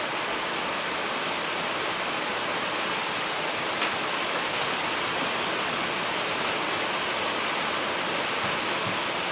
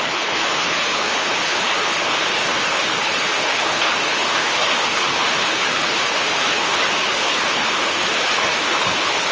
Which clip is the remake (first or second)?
second